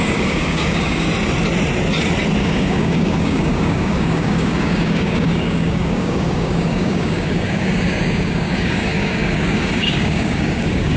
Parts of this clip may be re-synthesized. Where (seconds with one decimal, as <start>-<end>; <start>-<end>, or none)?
0.0-1.1; 2.4-11.0